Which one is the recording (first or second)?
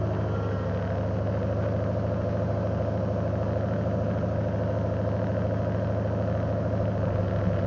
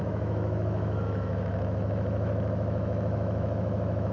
first